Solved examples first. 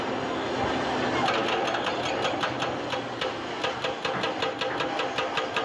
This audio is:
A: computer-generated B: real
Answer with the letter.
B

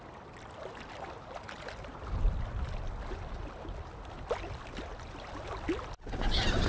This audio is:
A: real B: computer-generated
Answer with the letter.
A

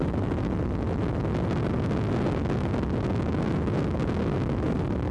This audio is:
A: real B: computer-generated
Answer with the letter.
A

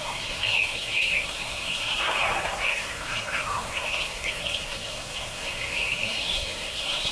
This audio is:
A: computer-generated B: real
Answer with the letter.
A